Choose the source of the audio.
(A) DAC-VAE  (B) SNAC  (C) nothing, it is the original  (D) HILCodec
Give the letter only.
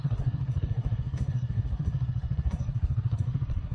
B